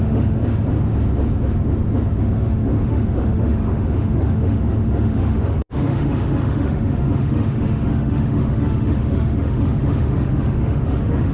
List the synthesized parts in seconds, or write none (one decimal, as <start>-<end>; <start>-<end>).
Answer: 0.0-0.4; 2.2-11.3